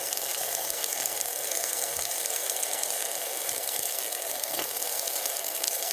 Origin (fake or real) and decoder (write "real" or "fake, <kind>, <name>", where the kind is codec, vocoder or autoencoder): fake, codec, SNAC